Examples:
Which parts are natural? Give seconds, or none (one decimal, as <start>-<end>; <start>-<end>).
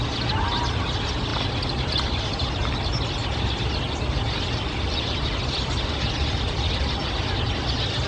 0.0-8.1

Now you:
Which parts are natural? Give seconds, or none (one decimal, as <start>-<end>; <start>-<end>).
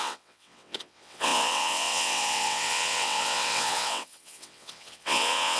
none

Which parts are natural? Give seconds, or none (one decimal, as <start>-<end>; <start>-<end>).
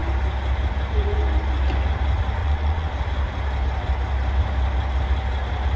0.0-2.4; 2.9-5.8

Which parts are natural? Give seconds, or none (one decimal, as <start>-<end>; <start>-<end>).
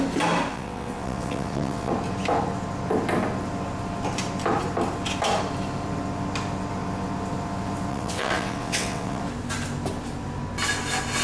0.0-0.5; 1.9-7.9; 9.2-11.2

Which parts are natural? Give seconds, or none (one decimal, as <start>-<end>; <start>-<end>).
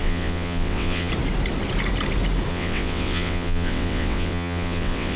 1.1-2.5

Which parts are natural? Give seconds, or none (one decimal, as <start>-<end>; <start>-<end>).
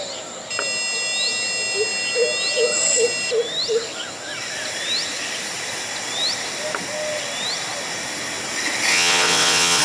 0.0-8.9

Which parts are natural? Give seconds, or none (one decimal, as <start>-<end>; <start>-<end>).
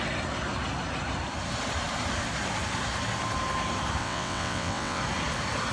0.0-4.0; 5.0-5.7